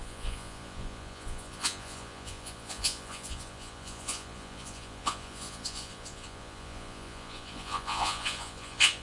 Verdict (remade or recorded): remade